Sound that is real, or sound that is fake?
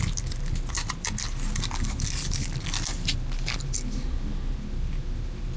real